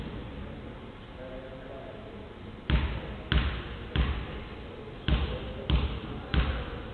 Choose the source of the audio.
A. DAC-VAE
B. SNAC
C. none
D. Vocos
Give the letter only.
C